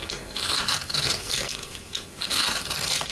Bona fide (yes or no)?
no